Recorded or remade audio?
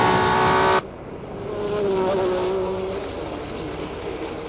recorded